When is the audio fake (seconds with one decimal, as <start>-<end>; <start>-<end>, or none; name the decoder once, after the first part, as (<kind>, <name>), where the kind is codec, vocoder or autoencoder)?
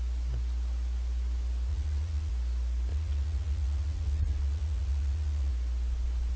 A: 1.7-2.3 (vocoder, Vocos); 2.9-5.5